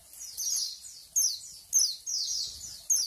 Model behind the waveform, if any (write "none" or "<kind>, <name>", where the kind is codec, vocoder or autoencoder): none